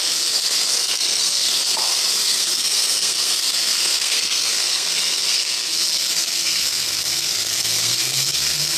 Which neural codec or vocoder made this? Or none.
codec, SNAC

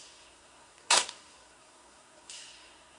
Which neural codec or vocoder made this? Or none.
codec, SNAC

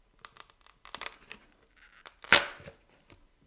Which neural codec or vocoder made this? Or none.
none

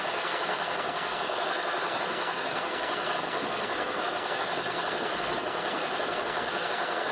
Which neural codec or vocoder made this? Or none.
codec, SNAC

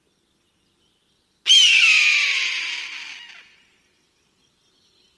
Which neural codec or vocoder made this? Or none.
none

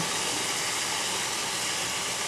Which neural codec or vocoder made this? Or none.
none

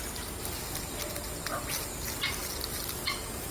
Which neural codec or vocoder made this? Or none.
none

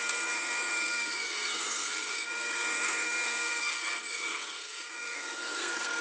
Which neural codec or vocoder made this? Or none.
codec, SNAC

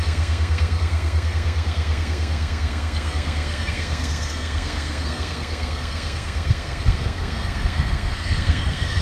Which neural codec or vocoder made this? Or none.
codec, SNAC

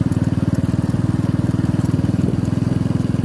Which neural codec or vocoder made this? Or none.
none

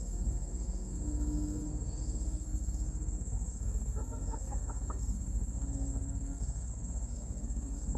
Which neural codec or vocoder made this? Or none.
codec, SNAC